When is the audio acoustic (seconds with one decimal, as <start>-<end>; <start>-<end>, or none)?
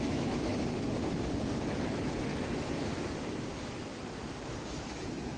0.5-1.5; 2.3-4.8